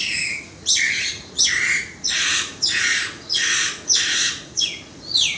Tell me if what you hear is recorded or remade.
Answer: remade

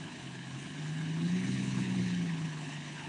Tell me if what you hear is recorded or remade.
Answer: remade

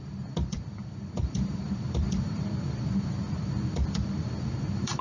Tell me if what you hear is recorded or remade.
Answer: remade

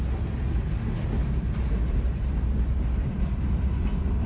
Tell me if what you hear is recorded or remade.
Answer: recorded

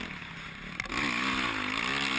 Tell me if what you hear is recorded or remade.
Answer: recorded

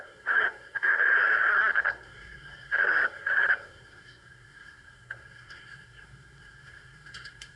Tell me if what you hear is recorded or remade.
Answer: remade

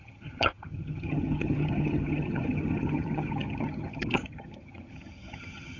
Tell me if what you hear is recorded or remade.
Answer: remade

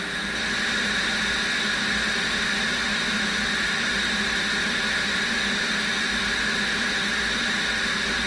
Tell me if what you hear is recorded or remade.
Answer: recorded